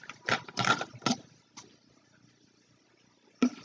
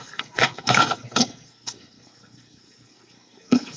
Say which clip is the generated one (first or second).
second